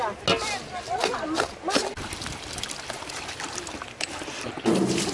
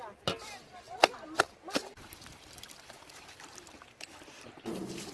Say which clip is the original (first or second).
first